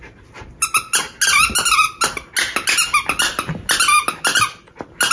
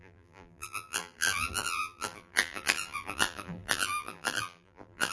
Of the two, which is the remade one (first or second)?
second